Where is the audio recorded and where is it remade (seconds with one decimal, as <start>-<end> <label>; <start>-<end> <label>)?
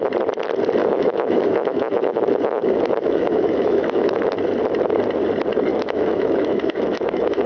0.0-0.8 recorded; 0.8-4.3 remade; 4.3-5.7 recorded; 5.7-7.5 remade